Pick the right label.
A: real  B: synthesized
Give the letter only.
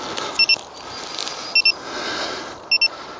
A